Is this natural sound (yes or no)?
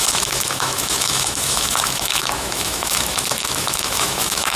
no